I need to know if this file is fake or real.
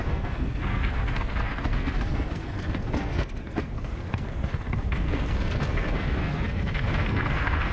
fake